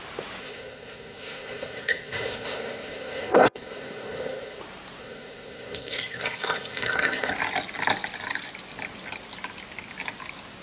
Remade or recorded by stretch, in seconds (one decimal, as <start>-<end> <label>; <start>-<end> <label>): 0.0-0.4 recorded; 0.4-4.6 remade; 4.6-5.0 recorded; 5.0-7.3 remade; 7.3-10.6 recorded